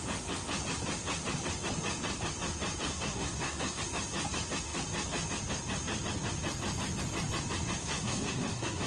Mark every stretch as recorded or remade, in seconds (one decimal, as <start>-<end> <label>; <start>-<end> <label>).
0.0-2.9 recorded; 2.9-3.8 remade; 3.8-7.8 recorded; 7.8-8.9 remade